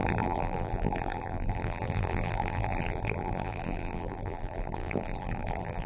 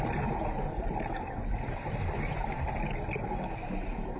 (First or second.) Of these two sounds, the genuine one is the second